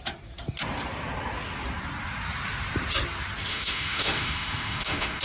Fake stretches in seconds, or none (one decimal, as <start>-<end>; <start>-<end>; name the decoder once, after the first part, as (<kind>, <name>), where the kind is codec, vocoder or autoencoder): 3.5-5.2 (autoencoder, DAC-VAE)